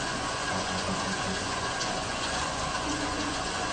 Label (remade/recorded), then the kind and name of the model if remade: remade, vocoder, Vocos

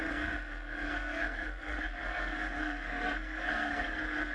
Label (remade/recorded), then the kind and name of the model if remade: remade, codec, SNAC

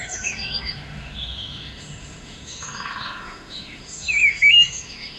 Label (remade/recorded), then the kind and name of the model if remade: remade, autoencoder, DAC-VAE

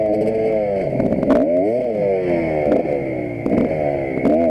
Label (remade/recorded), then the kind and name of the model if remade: recorded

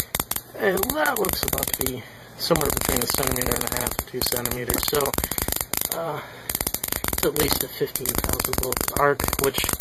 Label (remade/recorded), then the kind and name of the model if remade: remade, vocoder, BigVGAN v2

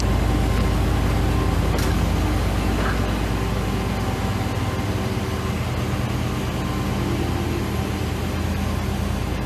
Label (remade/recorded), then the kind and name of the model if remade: recorded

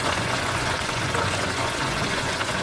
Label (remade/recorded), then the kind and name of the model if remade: remade, vocoder, Vocos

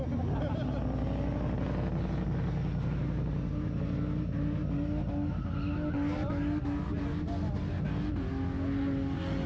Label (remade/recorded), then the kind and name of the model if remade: recorded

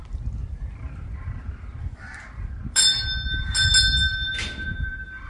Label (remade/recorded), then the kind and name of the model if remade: recorded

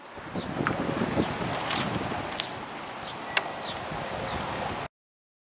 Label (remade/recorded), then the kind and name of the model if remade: recorded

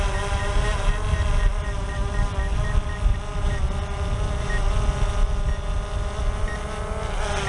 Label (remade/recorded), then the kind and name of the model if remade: recorded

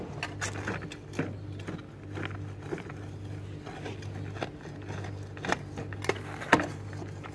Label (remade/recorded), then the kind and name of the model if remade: recorded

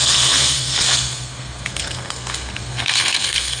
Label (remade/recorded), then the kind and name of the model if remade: remade, codec, SNAC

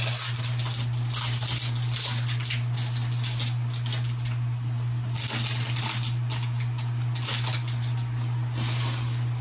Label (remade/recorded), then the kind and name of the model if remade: recorded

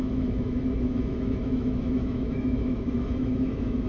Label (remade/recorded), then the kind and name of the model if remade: remade, autoencoder, DAC-VAE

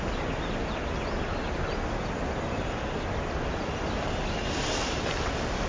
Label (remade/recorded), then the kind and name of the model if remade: recorded